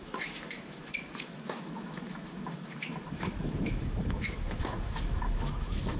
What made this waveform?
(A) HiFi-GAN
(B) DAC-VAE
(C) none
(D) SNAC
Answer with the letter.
B